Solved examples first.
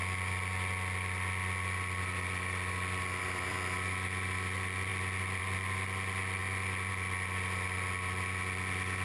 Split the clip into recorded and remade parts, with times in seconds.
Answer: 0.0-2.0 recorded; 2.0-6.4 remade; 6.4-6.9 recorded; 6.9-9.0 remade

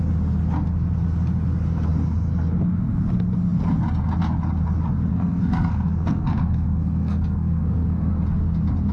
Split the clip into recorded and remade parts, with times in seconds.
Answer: 0.0-5.1 recorded; 5.1-8.1 remade; 8.1-8.9 recorded

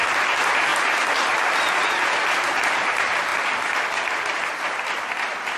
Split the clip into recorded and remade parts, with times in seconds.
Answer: 0.0-5.6 recorded

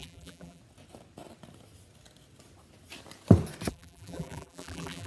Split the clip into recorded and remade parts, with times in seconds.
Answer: 0.0-0.6 remade; 0.6-3.7 recorded; 3.7-5.1 remade

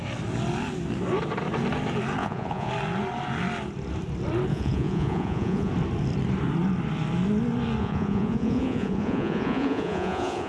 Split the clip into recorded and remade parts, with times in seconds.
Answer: 0.0-2.2 recorded; 2.2-2.7 remade; 2.7-4.5 recorded; 4.5-5.7 remade; 5.7-7.8 recorded; 7.8-10.5 remade